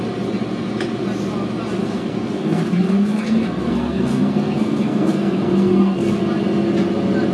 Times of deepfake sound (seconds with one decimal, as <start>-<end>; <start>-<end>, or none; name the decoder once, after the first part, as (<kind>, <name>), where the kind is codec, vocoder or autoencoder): 1.8-6.2 (codec, SNAC)